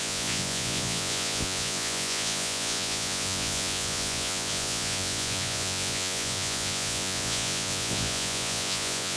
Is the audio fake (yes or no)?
yes